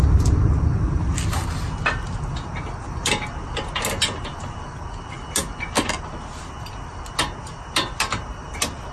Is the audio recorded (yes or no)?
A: yes